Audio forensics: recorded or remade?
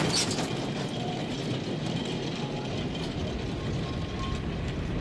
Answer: recorded